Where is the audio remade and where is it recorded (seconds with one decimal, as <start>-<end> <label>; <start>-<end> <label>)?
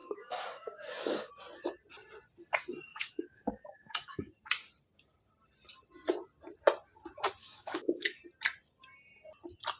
0.0-1.3 remade; 1.3-2.9 recorded; 2.9-4.3 remade; 4.3-7.4 recorded; 7.4-8.2 remade; 8.2-9.8 recorded